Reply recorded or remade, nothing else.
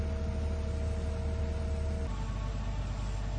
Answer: recorded